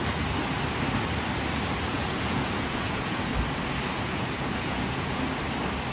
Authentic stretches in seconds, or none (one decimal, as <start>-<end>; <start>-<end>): 0.0-1.9; 3.3-3.9; 5.2-5.9